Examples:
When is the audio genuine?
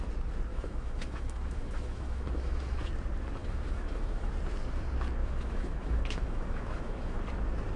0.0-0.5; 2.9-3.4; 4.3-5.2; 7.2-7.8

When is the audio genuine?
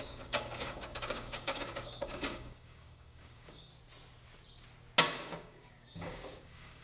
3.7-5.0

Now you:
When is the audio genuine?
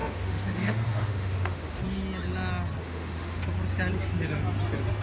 1.8-2.8; 3.4-5.0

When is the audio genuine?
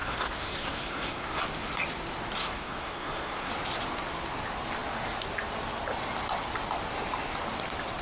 1.4-2.4; 3.5-8.0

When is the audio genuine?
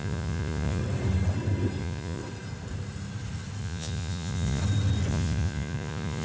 0.8-1.8; 2.2-3.6; 4.6-5.1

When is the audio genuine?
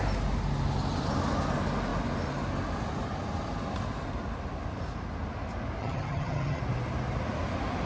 0.0-5.8; 6.6-7.9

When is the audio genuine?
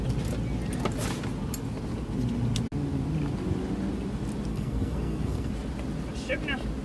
0.0-4.5; 5.5-6.8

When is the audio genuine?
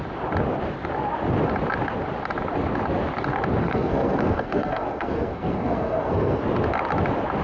0.0-3.6; 6.4-7.4